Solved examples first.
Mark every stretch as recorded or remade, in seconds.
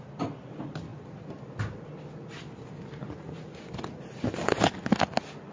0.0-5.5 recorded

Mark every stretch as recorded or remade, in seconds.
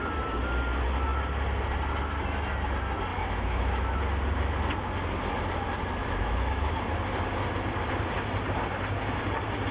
0.0-3.1 recorded; 3.1-4.0 remade; 4.0-6.0 recorded; 6.0-6.7 remade; 6.7-9.7 recorded